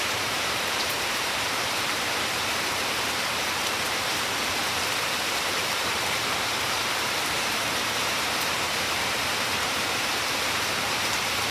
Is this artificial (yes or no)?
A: yes